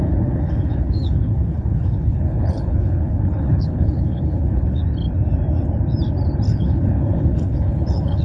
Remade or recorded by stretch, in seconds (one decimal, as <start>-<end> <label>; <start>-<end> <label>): 0.0-4.8 remade; 4.8-6.5 recorded; 6.5-8.2 remade